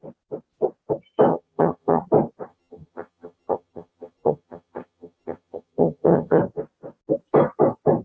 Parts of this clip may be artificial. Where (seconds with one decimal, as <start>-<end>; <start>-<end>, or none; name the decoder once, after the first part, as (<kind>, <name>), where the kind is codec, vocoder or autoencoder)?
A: 1.3-2.0 (vocoder, HiFi-GAN); 2.5-6.4